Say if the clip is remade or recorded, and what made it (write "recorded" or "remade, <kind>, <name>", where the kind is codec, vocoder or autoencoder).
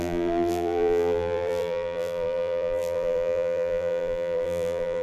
remade, vocoder, BigVGAN v2